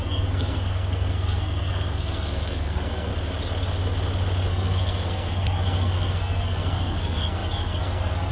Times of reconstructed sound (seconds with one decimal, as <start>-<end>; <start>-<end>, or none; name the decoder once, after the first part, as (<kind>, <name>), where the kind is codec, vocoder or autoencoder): 0.0-3.1 (codec, SNAC); 4.5-8.3